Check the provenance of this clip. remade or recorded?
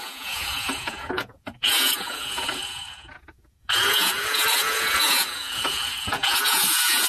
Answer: remade